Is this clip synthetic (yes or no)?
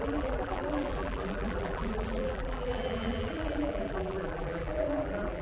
yes